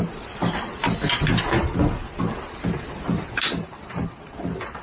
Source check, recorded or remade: recorded